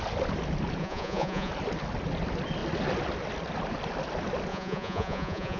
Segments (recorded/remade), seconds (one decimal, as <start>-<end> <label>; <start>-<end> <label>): 0.0-0.8 recorded; 0.8-1.5 remade; 1.5-4.5 recorded; 4.5-5.6 remade